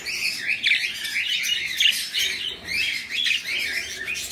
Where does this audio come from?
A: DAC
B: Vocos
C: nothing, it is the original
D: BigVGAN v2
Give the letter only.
C